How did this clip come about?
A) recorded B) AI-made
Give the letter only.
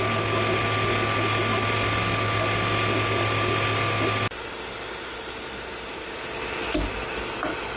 A